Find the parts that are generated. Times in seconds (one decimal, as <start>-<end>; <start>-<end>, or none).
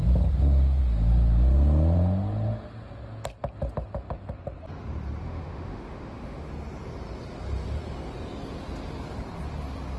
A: 5.2-6.5